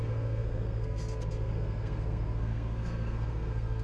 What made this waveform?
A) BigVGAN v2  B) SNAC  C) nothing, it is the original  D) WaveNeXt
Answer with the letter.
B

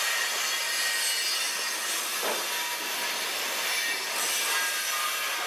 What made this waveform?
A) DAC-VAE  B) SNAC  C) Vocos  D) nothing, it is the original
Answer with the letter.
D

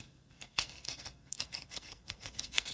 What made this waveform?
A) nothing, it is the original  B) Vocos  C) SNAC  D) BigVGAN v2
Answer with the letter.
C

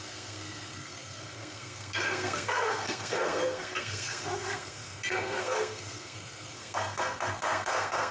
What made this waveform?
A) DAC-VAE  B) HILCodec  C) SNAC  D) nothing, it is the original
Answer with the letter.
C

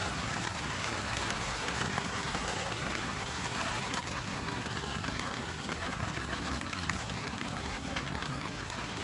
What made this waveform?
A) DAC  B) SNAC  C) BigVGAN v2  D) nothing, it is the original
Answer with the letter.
B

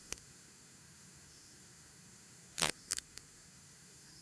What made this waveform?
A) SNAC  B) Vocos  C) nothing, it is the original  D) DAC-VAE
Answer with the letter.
A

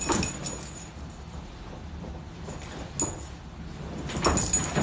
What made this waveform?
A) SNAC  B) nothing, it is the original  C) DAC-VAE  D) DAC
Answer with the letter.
B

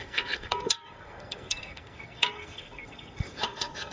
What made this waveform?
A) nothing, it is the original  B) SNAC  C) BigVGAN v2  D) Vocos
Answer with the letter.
B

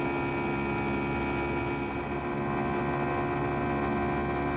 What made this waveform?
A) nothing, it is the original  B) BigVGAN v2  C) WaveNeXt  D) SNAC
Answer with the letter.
A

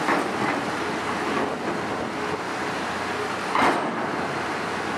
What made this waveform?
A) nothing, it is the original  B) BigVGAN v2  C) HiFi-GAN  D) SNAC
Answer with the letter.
A